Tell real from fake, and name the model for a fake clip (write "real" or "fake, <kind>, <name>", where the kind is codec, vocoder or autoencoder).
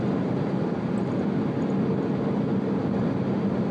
real